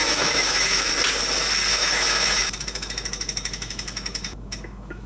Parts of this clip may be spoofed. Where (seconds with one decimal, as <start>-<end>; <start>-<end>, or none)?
0.0-0.9; 1.7-5.1

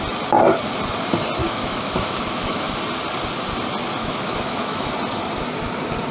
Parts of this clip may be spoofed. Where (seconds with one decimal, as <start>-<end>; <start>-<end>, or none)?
1.4-2.8; 4.0-4.9

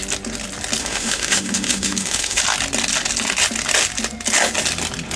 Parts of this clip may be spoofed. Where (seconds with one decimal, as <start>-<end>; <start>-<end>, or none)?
0.8-2.4

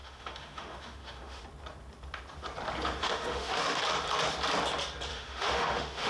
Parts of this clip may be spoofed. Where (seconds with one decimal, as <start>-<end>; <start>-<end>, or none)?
0.0-1.4; 3.0-3.8; 5.1-6.1

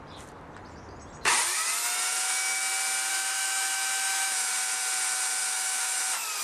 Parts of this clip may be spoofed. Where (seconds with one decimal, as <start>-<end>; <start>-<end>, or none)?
3.1-4.5; 5.4-6.0

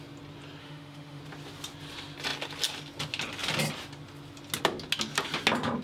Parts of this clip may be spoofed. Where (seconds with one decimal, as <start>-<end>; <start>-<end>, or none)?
0.6-1.2

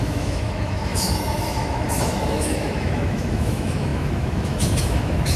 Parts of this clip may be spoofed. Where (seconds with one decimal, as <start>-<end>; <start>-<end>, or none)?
0.0-5.4

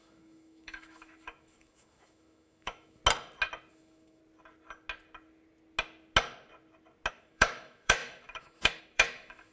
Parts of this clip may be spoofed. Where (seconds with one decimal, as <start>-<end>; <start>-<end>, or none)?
0.0-3.0; 3.7-4.2; 7.1-9.5